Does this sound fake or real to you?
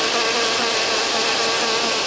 real